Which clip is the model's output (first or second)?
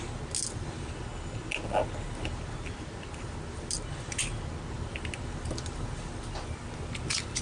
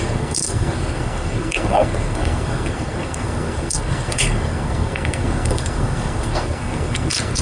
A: second